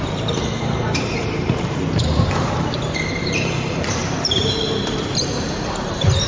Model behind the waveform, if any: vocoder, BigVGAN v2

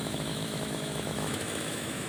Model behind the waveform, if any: autoencoder, DAC-VAE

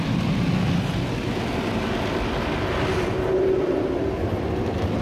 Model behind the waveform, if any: none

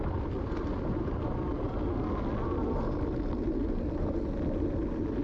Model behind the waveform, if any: none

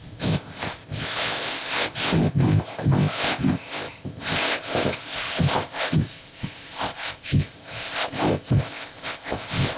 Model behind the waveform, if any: codec, ZipCodec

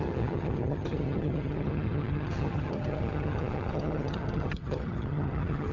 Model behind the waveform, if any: vocoder, HiFi-GAN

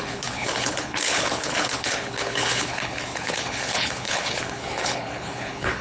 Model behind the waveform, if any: codec, HILCodec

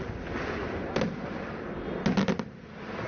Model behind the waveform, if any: none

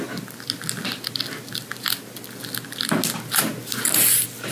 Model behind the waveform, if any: none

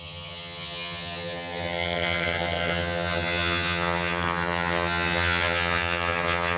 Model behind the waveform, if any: vocoder, HiFi-GAN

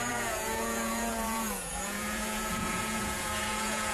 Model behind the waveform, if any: vocoder, Vocos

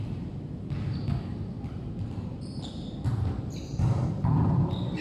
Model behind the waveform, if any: none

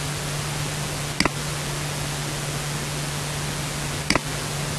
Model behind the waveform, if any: none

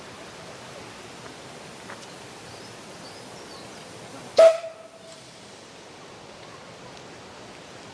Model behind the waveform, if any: none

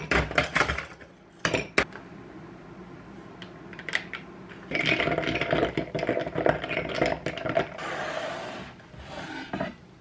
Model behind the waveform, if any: none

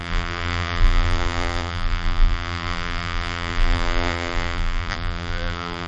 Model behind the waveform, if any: vocoder, BigVGAN v2